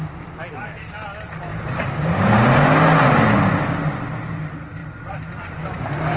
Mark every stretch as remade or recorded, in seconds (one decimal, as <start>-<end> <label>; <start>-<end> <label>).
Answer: 0.0-4.8 recorded; 4.8-5.8 remade; 5.8-6.2 recorded